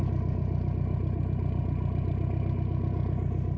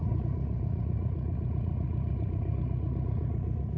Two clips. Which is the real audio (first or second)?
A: first